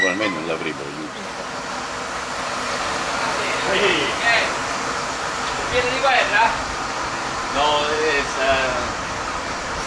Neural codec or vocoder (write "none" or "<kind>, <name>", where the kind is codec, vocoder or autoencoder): none